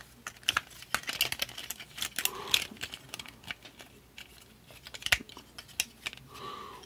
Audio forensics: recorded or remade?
recorded